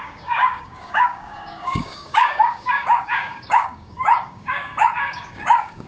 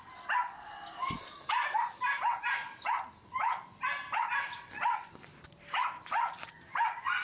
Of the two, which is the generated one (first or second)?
first